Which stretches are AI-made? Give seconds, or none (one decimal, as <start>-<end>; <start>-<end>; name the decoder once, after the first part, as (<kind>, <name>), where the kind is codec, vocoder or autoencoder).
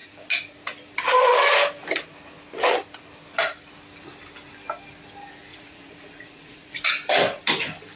5.5-6.9 (vocoder, Vocos)